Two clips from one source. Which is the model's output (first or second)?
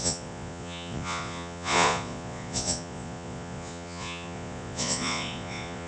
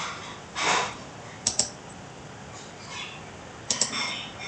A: first